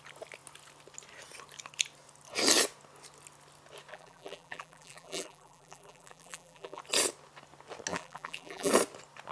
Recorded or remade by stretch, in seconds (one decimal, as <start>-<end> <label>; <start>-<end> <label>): 0.0-3.9 recorded; 3.9-6.8 remade; 6.8-7.9 recorded; 7.9-8.7 remade; 8.7-9.3 recorded